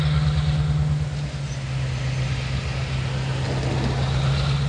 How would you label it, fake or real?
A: real